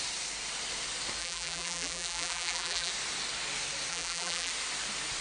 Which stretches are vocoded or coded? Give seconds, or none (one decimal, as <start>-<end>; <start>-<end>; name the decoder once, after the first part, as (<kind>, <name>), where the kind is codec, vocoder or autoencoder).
1.2-2.9 (vocoder, BigVGAN v2); 3.9-4.5